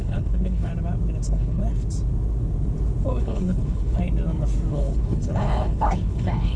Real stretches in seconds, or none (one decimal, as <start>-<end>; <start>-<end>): 0.7-1.2; 1.6-3.2; 4.0-4.7